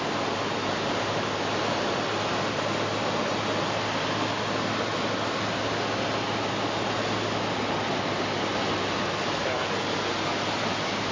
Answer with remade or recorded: recorded